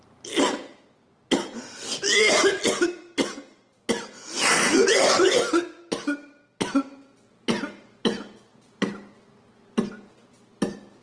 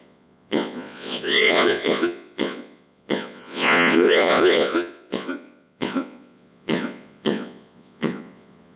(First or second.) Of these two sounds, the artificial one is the second